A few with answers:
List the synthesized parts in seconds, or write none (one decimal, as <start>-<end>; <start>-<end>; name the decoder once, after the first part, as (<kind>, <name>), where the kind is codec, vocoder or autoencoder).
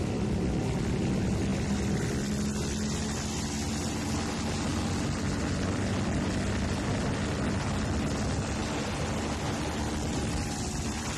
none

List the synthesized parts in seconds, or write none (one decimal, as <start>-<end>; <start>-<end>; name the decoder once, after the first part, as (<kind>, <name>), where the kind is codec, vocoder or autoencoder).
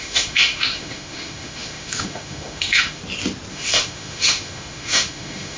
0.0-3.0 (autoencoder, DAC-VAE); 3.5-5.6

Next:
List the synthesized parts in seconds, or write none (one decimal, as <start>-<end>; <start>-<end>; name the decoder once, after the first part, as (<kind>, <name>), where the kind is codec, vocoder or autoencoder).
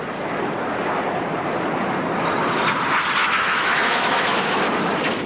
3.2-4.6 (autoencoder, DAC-VAE)